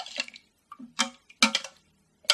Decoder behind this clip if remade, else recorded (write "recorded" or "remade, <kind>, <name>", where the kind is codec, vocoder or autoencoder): recorded